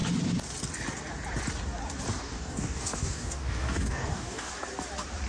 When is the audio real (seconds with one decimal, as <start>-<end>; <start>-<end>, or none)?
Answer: 0.0-2.2; 4.5-5.3